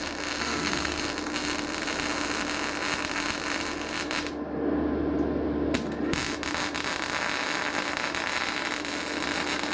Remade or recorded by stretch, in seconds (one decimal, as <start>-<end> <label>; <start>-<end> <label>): 0.0-0.4 recorded; 0.4-1.0 remade; 1.0-9.7 recorded